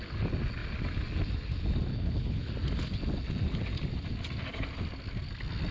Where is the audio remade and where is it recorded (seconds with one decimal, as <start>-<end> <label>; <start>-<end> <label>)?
0.0-1.9 recorded; 1.9-2.5 remade; 2.5-5.7 recorded